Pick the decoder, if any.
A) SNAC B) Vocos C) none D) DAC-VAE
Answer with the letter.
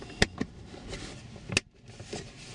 C